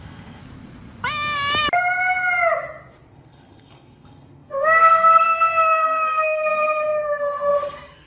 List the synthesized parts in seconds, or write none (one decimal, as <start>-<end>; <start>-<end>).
0.0-0.4; 3.1-8.1